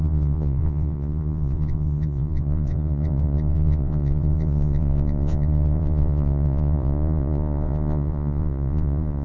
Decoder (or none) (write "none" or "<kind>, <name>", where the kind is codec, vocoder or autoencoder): vocoder, Vocos